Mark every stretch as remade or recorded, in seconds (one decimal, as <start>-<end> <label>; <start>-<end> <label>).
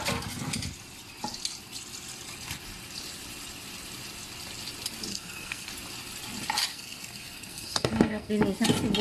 0.0-5.1 recorded; 5.1-5.7 remade; 5.7-6.7 recorded; 6.7-8.3 remade; 8.3-9.0 recorded